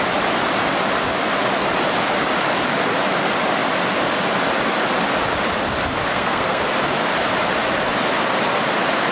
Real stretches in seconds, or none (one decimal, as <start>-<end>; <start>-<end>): 0.0-6.1; 6.6-9.1